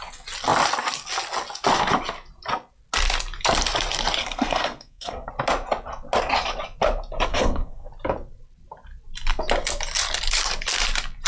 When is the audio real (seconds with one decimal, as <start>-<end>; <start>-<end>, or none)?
0.0-4.2; 5.3-7.3; 7.9-11.3